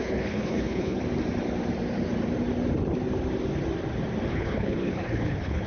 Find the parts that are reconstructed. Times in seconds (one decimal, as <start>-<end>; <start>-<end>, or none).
0.0-1.0; 4.3-5.7